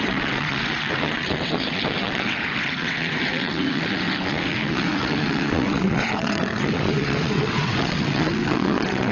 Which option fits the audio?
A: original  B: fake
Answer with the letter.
B